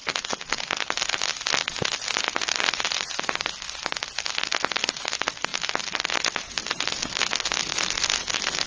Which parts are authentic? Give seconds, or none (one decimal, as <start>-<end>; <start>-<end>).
0.0-8.7